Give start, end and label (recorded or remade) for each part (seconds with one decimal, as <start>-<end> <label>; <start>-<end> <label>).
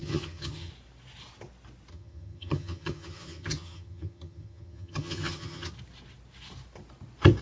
0.0-0.7 remade; 0.7-1.9 recorded; 1.9-5.7 remade; 5.7-7.4 recorded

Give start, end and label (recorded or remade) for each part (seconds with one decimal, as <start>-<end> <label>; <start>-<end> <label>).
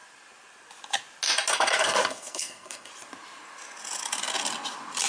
0.0-1.5 recorded; 1.5-2.9 remade; 2.9-5.1 recorded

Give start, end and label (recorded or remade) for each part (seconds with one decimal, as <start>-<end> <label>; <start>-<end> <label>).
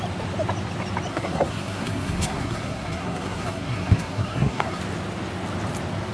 0.0-1.1 recorded; 1.1-4.8 remade; 4.8-6.1 recorded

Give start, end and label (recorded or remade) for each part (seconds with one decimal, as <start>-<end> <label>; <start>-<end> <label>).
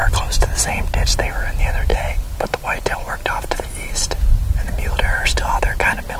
0.0-0.6 remade; 0.6-1.9 recorded; 1.9-5.6 remade; 5.6-6.2 recorded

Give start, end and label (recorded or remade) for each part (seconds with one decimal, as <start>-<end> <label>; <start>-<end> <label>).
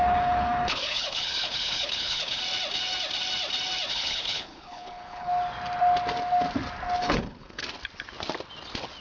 0.0-2.4 remade; 2.4-3.9 recorded; 3.9-5.3 remade; 5.3-7.0 recorded; 7.0-7.6 remade; 7.6-9.0 recorded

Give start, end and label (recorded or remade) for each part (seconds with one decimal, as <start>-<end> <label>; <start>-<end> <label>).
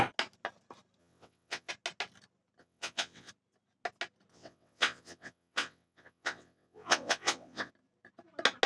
0.0-1.0 recorded; 1.0-1.7 remade; 1.7-2.6 recorded; 2.6-3.3 remade; 3.3-4.3 recorded; 4.3-7.7 remade; 7.7-8.7 recorded